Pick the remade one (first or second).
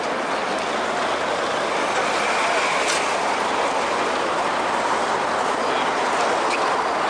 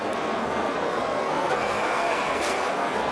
second